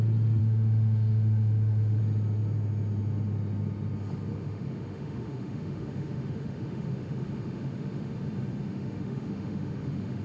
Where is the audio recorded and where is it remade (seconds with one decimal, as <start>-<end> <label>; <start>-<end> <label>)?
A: 0.0-0.4 recorded; 0.4-2.0 remade; 2.0-4.3 recorded; 4.3-8.1 remade; 8.1-8.7 recorded; 8.7-10.2 remade